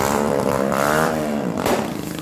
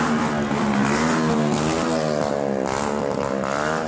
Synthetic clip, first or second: first